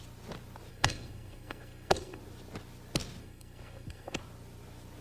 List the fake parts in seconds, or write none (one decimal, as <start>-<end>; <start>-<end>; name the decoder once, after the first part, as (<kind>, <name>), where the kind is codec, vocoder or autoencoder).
0.7-2.2 (codec, SNAC); 3.2-4.2